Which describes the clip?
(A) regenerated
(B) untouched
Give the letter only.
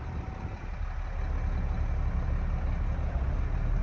B